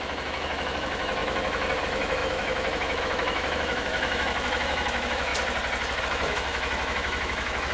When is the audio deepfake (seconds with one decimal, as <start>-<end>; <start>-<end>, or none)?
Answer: 0.0-5.3; 6.0-7.7